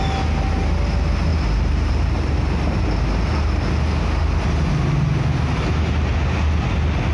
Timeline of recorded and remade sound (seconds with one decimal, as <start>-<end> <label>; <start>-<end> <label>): 0.0-1.3 recorded; 1.3-2.8 remade; 2.8-7.1 recorded